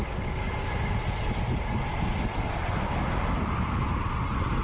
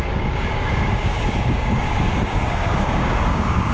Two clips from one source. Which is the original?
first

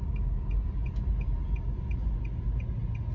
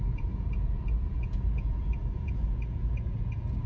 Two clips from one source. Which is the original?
first